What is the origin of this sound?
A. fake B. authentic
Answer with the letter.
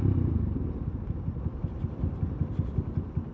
B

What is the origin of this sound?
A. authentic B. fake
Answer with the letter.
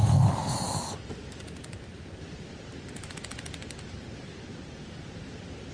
A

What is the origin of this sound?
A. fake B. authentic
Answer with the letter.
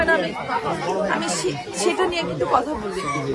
B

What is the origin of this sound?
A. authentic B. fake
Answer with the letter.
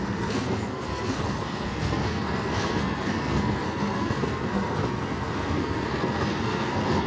B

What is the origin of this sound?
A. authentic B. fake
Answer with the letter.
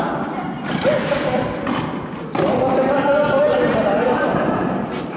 A